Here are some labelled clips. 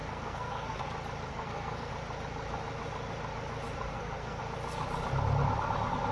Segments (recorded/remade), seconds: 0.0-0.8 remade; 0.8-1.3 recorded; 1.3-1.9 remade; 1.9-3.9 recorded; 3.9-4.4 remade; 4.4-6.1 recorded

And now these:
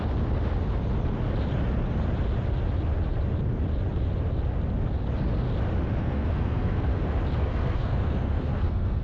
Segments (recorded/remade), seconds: 0.0-6.0 recorded; 6.0-7.0 remade; 7.0-7.4 recorded; 7.4-9.0 remade

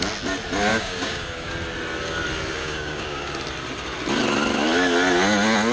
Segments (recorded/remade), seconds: 0.0-0.7 recorded; 0.7-1.5 remade; 1.5-2.6 recorded; 2.6-3.3 remade; 3.3-5.7 recorded